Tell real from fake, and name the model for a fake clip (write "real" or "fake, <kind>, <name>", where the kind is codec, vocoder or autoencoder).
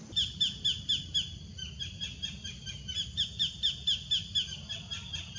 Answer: real